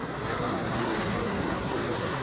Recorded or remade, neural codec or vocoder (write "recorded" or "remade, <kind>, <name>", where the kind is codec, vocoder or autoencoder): remade, codec, SNAC